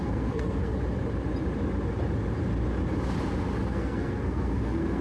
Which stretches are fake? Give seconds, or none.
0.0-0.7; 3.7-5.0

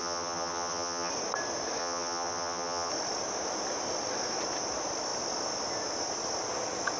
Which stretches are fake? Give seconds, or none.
0.0-1.1; 1.8-2.9

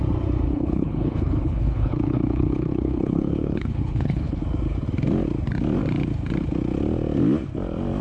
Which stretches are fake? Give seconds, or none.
0.5-4.4

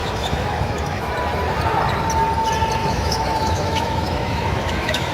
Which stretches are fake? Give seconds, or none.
0.0-1.1; 2.8-5.1

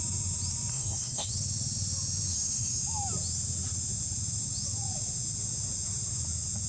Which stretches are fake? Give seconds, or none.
0.7-1.3; 2.3-2.8

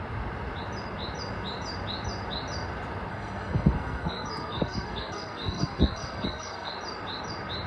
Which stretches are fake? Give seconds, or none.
3.1-6.7